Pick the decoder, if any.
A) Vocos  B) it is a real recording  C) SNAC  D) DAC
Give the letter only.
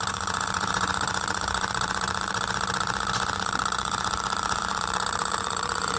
A